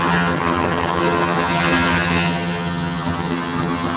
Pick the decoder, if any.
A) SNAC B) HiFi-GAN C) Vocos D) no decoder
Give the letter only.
B